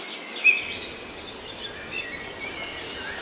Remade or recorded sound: recorded